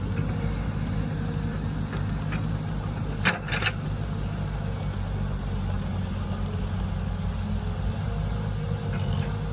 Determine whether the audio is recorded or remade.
recorded